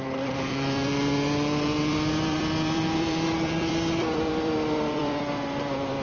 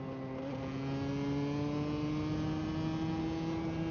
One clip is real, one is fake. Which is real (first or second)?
second